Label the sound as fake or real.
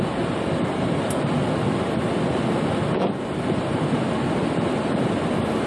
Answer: real